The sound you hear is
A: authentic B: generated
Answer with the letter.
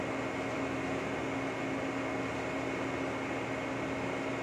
A